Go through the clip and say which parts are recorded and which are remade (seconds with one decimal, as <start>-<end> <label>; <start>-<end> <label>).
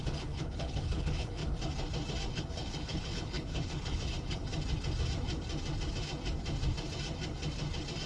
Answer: 0.0-1.4 remade; 1.4-2.3 recorded; 2.3-4.4 remade; 4.4-8.1 recorded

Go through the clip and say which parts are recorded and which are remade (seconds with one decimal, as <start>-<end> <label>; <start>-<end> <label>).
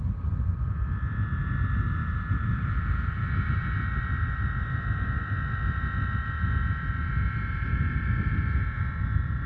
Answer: 0.0-9.5 recorded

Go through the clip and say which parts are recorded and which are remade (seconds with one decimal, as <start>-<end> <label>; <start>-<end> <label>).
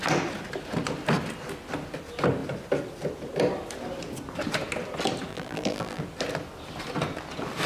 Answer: 0.0-5.3 recorded; 5.3-6.0 remade; 6.0-7.7 recorded